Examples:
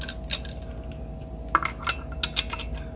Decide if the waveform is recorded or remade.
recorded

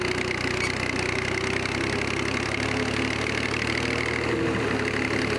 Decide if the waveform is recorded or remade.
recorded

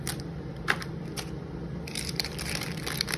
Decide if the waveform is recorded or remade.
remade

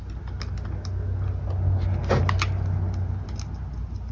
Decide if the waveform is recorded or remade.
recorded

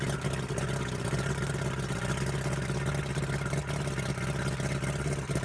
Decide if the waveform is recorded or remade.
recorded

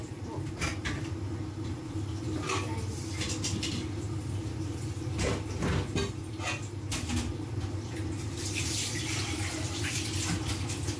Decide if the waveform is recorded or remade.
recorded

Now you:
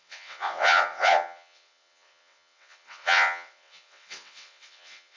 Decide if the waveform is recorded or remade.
remade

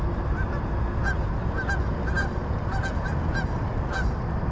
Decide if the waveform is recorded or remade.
recorded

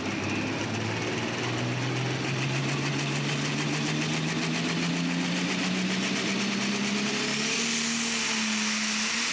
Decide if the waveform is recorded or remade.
recorded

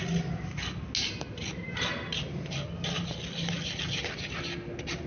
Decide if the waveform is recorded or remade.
recorded